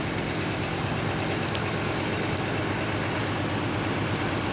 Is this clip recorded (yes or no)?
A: yes